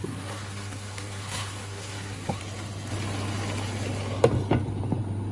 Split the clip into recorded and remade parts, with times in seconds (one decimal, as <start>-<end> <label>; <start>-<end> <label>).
0.0-2.4 remade; 2.4-5.3 recorded